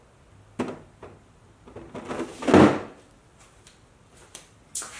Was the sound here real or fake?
real